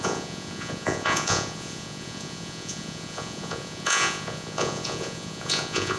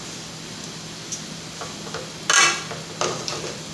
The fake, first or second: first